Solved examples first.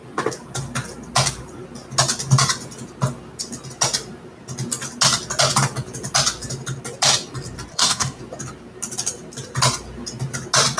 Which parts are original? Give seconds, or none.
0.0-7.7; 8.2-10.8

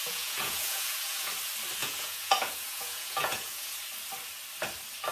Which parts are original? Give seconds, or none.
1.3-1.8; 3.8-5.1

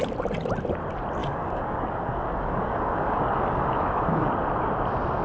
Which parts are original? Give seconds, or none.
0.0-1.2; 4.3-5.2

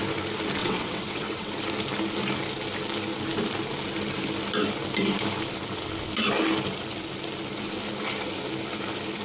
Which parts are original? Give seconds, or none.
0.0-0.6; 1.5-9.2

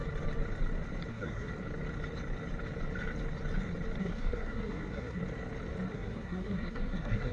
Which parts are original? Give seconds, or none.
0.0-1.1; 1.5-4.0; 5.2-5.9

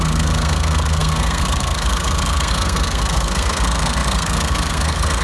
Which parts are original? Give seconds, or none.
none